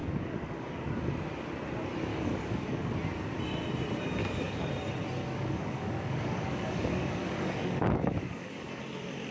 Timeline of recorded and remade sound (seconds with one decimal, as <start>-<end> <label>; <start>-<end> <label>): 0.0-1.0 remade; 1.0-2.1 recorded; 2.1-2.9 remade; 2.9-4.2 recorded; 4.2-4.7 remade; 4.7-5.2 recorded; 5.2-8.8 remade; 8.8-9.3 recorded